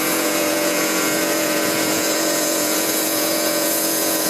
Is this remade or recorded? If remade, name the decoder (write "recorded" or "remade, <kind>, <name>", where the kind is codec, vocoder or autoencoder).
remade, vocoder, Vocos